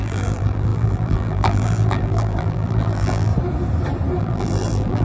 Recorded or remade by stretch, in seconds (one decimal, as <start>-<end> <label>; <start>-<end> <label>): 0.0-3.3 remade; 3.3-4.2 recorded; 4.2-5.0 remade